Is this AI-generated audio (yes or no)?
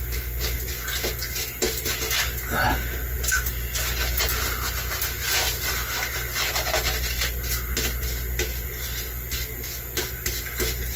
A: no